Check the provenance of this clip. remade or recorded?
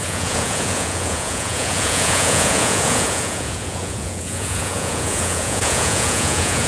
remade